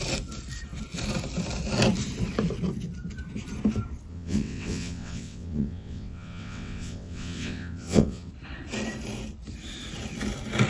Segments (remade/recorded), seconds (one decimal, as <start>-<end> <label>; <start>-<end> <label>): 0.0-4.1 recorded; 4.1-8.3 remade; 8.3-10.7 recorded